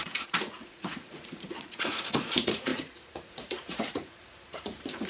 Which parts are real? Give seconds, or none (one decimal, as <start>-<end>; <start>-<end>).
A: none